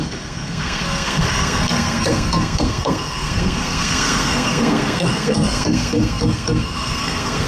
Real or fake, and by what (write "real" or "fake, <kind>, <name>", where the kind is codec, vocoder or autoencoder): fake, codec, SNAC